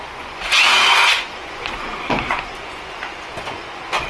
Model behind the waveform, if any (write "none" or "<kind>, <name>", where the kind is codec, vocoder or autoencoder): vocoder, Vocos